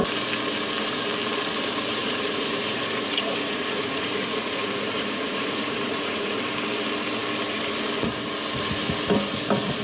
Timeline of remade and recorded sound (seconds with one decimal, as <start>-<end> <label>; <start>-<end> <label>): 0.0-2.0 recorded; 2.0-6.4 remade; 6.4-9.8 recorded